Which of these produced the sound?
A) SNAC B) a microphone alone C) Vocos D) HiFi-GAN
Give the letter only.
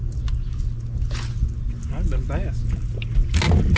B